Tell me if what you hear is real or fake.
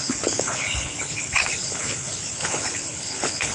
fake